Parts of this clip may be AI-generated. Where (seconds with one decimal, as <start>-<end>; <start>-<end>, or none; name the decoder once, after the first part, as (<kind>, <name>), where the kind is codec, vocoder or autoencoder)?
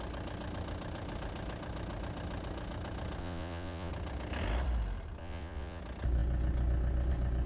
3.2-3.9 (vocoder, Vocos); 5.2-5.8